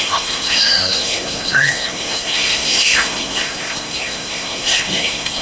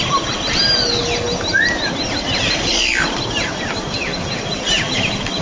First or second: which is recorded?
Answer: second